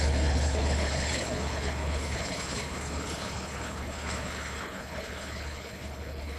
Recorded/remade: remade